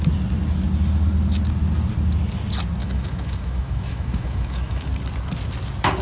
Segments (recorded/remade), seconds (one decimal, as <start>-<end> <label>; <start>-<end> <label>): 0.0-2.8 recorded; 2.8-4.9 remade; 4.9-6.0 recorded